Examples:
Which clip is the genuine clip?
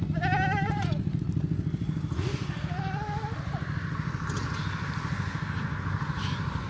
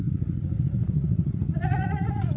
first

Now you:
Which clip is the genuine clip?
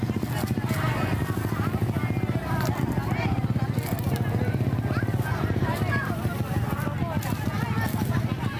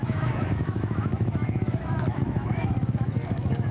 first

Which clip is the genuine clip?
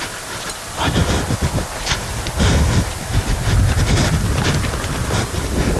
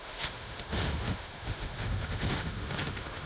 first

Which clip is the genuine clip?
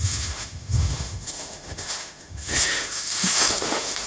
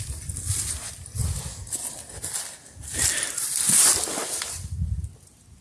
second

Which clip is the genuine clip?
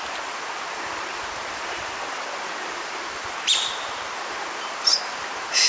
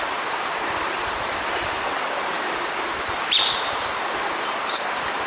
first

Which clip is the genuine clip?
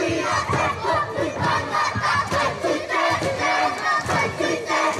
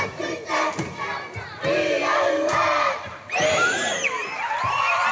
first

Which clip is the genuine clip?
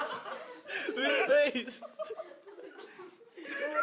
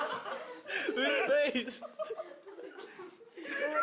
second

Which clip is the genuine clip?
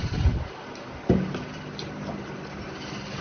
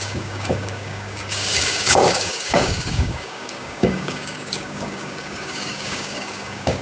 first